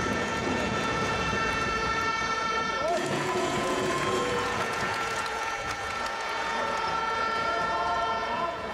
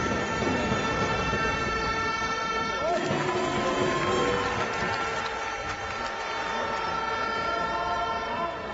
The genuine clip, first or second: second